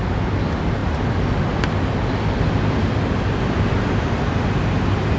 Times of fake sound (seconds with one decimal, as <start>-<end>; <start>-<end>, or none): none